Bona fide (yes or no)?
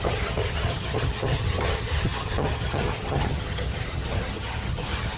no